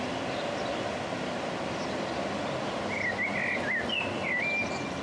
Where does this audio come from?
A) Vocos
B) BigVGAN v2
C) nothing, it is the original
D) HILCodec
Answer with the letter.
C